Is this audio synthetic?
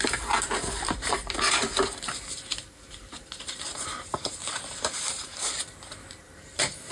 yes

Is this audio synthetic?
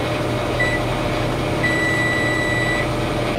no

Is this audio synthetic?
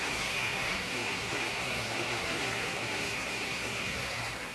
yes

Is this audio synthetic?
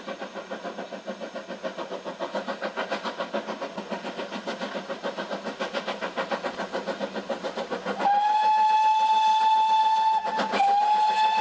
no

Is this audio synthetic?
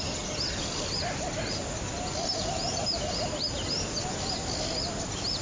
no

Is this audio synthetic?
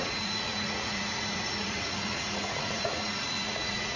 yes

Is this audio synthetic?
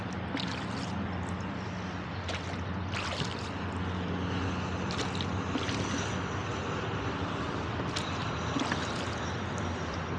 no